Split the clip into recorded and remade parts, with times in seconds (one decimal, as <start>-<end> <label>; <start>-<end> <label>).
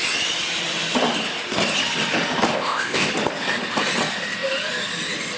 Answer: 0.0-2.5 recorded; 2.5-3.1 remade; 3.1-5.4 recorded